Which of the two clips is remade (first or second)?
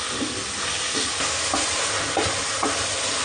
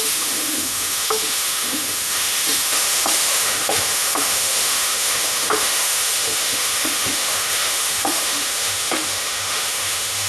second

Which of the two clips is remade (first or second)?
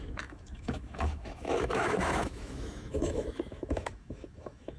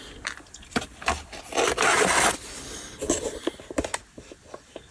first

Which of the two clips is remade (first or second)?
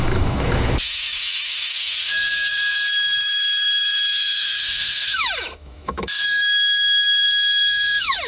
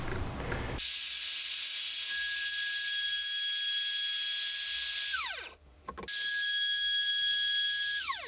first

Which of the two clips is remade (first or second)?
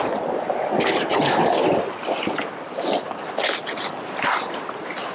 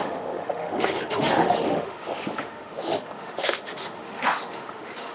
second